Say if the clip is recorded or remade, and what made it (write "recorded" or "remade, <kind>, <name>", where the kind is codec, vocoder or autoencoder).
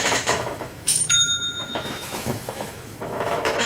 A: remade, autoencoder, DAC-VAE